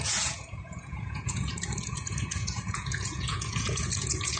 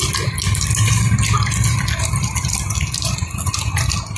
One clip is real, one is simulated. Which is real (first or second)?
second